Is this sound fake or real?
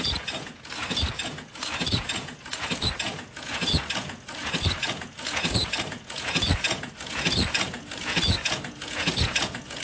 fake